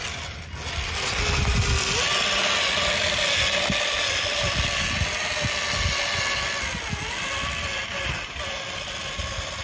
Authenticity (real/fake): real